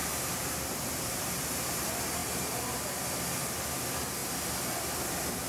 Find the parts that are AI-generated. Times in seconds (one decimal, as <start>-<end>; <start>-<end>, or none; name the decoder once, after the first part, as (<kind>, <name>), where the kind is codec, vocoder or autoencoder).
0.0-1.8 (vocoder, BigVGAN v2)